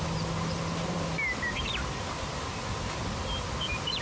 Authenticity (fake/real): real